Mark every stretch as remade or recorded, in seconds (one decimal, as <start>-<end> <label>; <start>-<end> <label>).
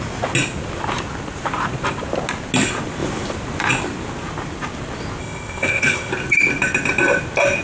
0.0-5.2 recorded; 5.2-6.1 remade; 6.1-7.6 recorded